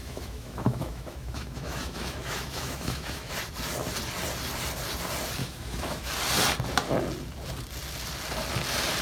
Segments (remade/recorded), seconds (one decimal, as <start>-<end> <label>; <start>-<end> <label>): 0.0-3.3 remade; 3.3-5.4 recorded; 5.4-6.1 remade; 6.1-9.0 recorded